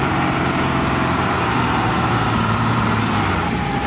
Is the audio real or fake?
fake